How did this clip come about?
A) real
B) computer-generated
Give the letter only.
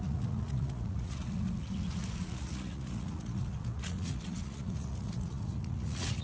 B